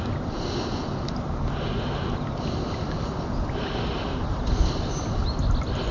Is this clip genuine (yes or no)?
yes